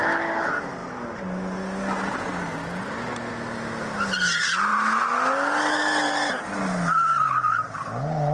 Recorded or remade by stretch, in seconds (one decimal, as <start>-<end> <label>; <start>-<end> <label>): 0.0-8.3 recorded